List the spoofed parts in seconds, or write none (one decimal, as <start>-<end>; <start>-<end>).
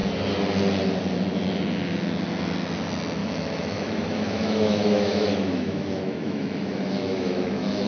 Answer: 3.2-7.9